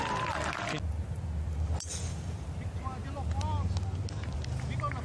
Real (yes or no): yes